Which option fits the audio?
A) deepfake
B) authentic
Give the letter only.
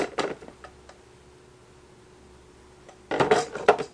B